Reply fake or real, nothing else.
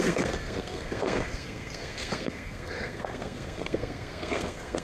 fake